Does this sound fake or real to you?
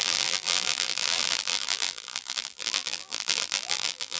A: fake